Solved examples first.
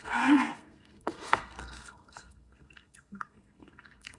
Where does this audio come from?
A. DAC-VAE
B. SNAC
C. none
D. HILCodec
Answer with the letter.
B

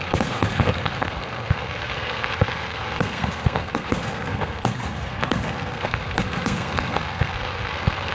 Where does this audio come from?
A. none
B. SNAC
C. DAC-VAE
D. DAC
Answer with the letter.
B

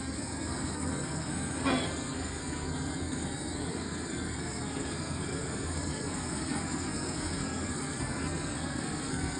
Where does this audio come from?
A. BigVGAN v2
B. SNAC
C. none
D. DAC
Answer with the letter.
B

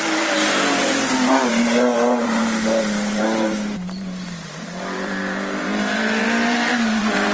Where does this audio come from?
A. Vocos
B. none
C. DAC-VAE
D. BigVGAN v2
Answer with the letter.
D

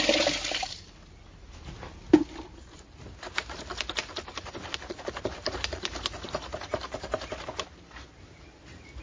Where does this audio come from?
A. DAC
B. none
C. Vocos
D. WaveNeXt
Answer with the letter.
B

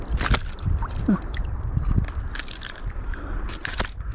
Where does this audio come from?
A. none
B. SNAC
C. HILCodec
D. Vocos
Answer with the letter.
A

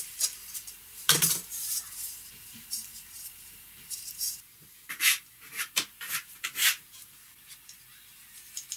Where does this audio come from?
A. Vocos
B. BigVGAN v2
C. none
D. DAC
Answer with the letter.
B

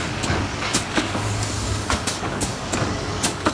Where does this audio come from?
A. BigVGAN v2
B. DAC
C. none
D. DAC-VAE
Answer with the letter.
B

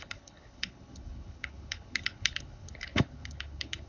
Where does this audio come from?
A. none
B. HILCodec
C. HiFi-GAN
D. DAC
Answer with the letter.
B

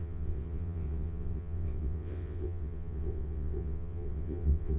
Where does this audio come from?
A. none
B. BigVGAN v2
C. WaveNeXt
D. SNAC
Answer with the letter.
C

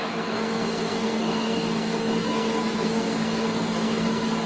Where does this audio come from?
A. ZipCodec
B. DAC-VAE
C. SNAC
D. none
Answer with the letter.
C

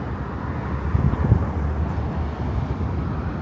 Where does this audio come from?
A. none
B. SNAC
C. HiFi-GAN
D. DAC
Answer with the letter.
A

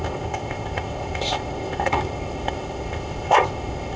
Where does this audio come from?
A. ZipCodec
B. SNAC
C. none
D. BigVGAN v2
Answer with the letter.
A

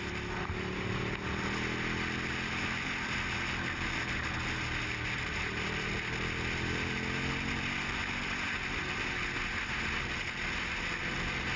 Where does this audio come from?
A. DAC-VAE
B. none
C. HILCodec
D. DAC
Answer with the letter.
B